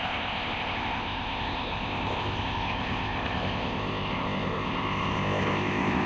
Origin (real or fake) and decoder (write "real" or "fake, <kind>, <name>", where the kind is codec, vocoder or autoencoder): fake, codec, ZipCodec